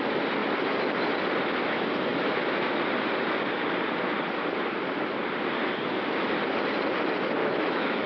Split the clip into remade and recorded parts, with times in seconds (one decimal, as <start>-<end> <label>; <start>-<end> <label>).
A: 0.0-7.4 recorded; 7.4-8.1 remade